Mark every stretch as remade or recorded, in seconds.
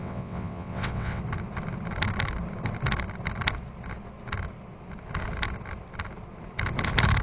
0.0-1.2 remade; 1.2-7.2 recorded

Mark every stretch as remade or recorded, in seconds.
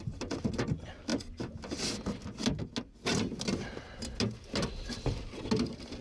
0.0-6.0 recorded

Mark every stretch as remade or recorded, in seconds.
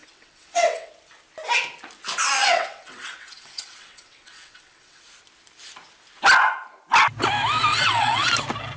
0.0-0.9 remade; 0.9-2.4 recorded; 2.4-5.0 remade; 5.0-7.7 recorded; 7.7-8.3 remade; 8.3-8.8 recorded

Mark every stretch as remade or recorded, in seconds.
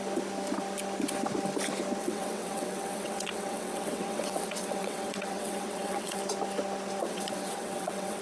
0.0-2.0 recorded; 2.0-6.2 remade; 6.2-7.0 recorded; 7.0-8.2 remade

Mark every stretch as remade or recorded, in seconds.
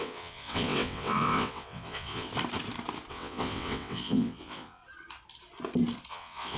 0.0-2.3 remade; 2.3-3.1 recorded; 3.1-4.8 remade; 4.8-6.1 recorded; 6.1-6.6 remade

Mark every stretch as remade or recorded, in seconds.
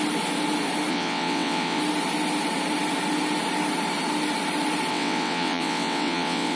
0.0-0.9 recorded; 0.9-1.8 remade; 1.8-4.9 recorded; 4.9-6.6 remade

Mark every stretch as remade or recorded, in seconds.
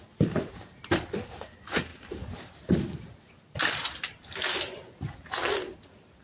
0.0-6.2 recorded